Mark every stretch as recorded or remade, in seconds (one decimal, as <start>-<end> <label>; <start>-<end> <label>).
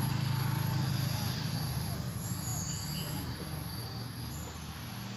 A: 0.0-5.2 recorded